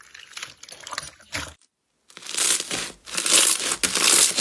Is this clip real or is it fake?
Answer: real